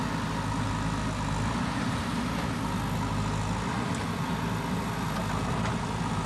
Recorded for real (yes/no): yes